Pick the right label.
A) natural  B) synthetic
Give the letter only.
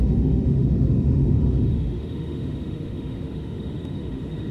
B